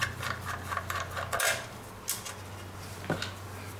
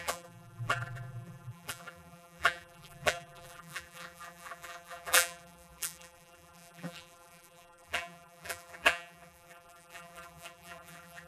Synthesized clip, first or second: second